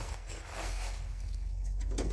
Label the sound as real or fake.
fake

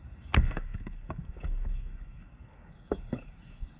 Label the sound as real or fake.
fake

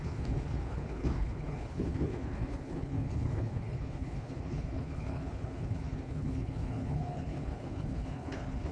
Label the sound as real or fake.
fake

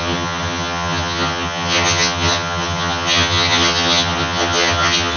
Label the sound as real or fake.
fake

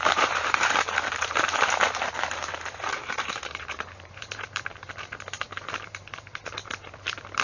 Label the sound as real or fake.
fake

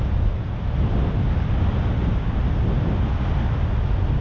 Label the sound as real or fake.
real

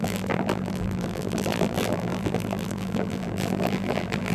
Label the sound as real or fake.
fake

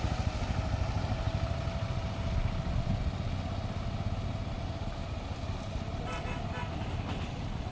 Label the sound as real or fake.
real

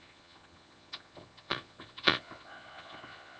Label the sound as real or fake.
fake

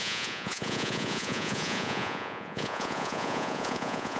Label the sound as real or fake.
fake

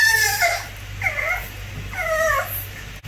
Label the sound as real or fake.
real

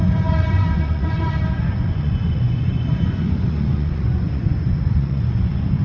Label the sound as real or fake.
fake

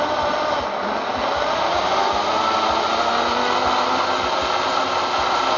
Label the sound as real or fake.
real